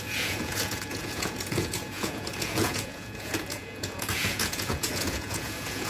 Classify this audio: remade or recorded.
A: remade